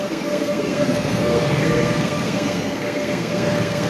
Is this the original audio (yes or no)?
no